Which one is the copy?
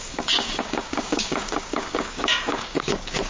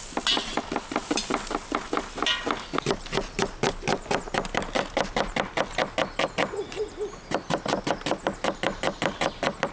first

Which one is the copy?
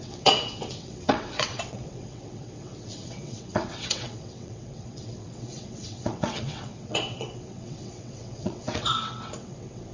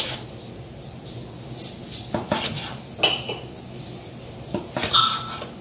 first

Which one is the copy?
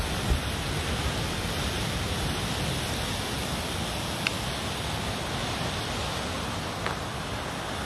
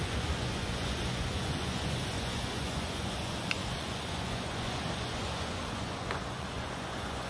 second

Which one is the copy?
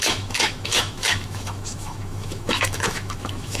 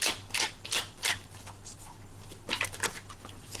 first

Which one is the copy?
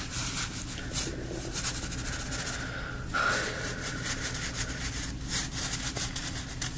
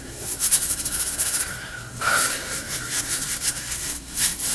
second